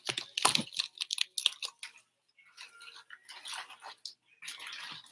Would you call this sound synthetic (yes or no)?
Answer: no